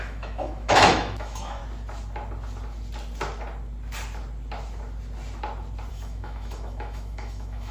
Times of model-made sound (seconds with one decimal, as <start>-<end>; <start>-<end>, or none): 0.0-1.6; 5.9-7.7